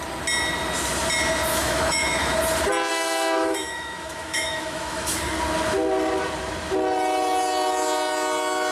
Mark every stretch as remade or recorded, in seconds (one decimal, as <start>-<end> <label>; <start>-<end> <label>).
0.0-1.5 recorded; 1.5-2.4 remade; 2.4-2.9 recorded; 2.9-5.2 remade; 5.2-8.7 recorded